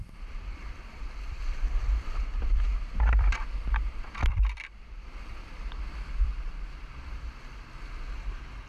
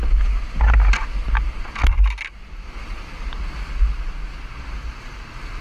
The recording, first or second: second